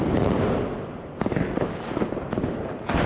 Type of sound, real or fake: real